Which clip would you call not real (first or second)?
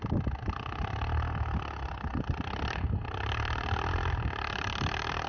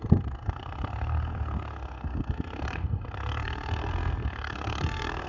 second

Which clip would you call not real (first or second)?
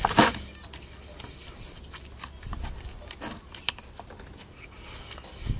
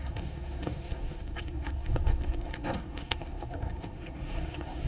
second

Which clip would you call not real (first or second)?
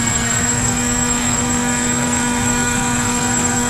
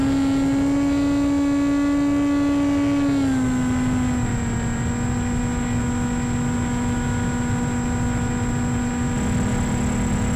first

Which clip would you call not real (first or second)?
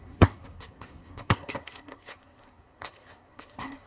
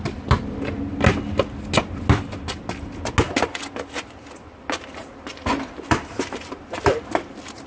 first